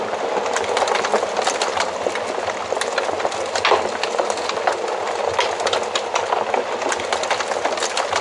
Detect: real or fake real